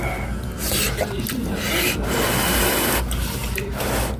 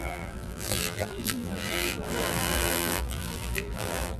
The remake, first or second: second